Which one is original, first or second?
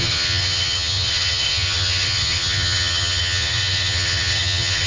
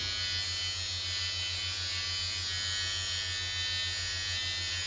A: second